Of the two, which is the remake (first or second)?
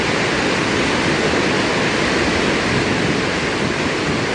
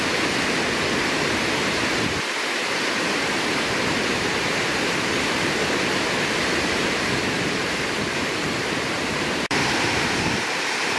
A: second